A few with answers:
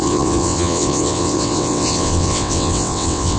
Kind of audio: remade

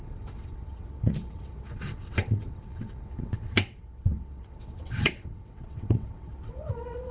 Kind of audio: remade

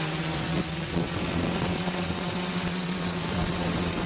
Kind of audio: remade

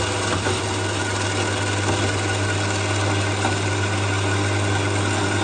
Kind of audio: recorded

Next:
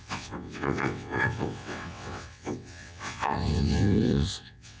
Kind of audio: remade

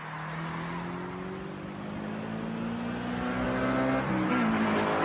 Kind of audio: recorded